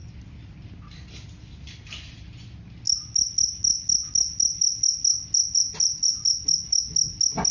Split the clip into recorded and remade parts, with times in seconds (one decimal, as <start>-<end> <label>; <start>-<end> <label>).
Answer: 0.0-7.5 recorded